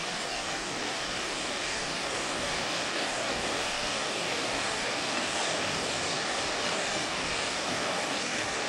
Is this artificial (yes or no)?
yes